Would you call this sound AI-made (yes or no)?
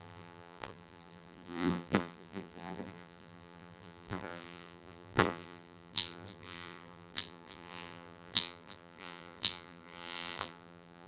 yes